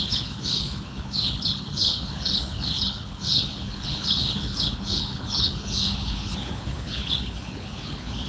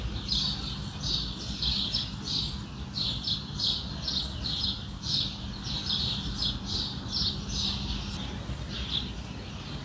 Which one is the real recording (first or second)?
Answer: second